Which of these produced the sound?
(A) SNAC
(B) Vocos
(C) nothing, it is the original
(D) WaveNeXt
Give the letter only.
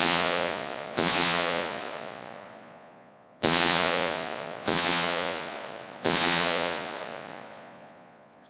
B